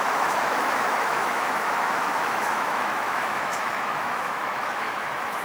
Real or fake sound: fake